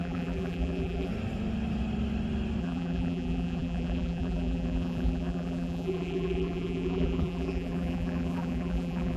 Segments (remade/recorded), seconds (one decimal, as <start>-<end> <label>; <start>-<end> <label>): 0.0-1.1 remade; 1.1-2.6 recorded; 2.6-9.2 remade